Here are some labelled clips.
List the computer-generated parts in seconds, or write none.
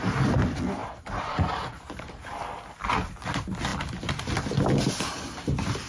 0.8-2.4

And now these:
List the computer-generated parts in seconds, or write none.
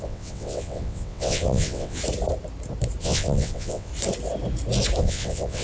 0.0-2.0; 3.0-3.9; 5.0-5.6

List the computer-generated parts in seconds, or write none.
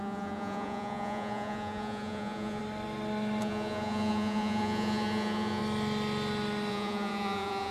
0.0-2.6; 3.4-5.6; 6.7-7.7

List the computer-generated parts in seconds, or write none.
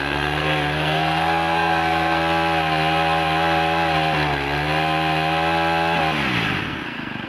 0.0-2.2; 6.6-7.3